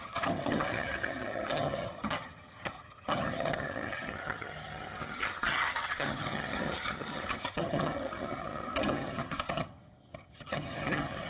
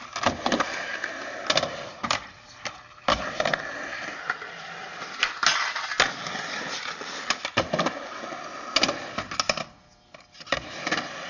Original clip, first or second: second